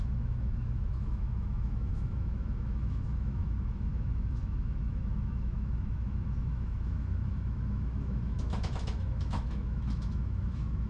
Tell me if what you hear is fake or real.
fake